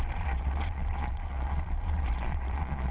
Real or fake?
fake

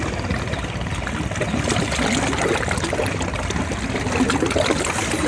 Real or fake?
real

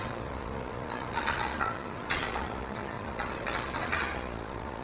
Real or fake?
fake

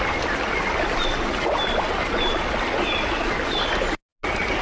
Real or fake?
real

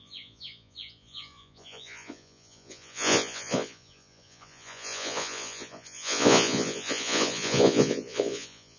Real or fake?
fake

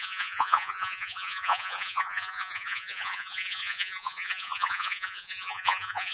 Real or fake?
fake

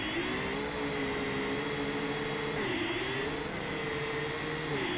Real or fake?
real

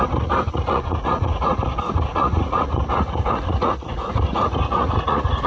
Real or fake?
fake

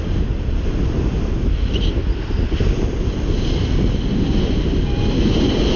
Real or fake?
real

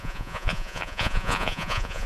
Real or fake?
fake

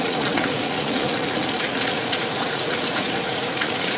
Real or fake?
fake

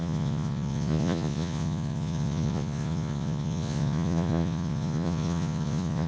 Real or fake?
fake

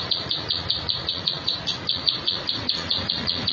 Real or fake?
fake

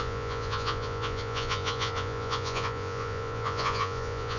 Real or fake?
fake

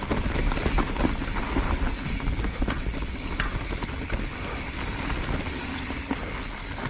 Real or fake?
real